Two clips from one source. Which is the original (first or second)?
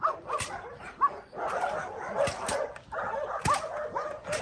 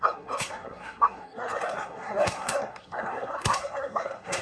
first